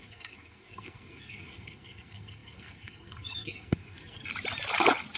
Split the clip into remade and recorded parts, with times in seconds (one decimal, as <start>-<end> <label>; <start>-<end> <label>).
0.0-4.3 remade; 4.3-5.2 recorded